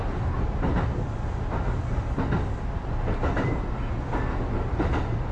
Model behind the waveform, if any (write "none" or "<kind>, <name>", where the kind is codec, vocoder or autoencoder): none